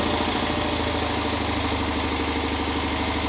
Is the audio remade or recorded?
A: recorded